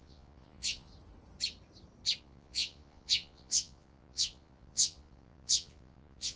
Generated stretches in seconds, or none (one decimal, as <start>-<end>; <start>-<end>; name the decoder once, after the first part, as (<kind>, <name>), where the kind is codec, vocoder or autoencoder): 0.0-0.9 (vocoder, Vocos); 2.2-6.4

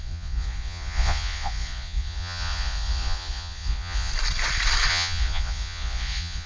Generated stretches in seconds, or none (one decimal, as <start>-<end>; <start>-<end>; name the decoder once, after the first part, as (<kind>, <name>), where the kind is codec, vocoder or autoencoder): 0.0-4.1 (vocoder, Vocos); 4.9-6.5

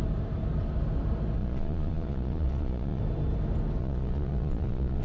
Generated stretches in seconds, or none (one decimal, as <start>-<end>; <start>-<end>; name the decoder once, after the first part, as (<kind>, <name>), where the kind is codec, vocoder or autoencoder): 1.4-3.0 (vocoder, Vocos); 3.8-5.0

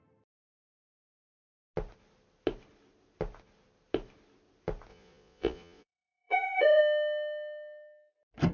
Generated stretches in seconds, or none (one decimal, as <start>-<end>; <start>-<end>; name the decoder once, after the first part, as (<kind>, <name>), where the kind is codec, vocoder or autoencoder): 4.9-6.8 (vocoder, Vocos)